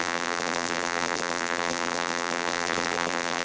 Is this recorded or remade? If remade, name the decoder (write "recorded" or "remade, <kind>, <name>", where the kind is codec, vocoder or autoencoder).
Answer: remade, vocoder, BigVGAN v2